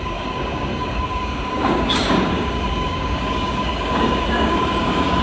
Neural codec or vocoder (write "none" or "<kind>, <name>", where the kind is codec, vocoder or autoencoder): codec, DAC